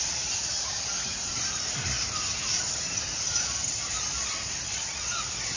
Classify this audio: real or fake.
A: real